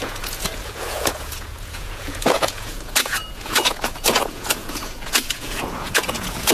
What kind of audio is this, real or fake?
fake